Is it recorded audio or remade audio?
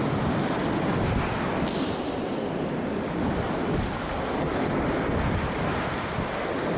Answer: recorded